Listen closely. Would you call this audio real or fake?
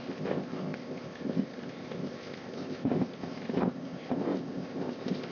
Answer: fake